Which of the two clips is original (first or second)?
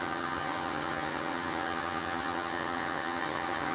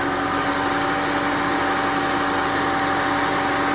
second